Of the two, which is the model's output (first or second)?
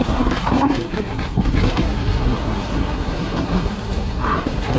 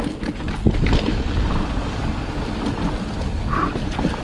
first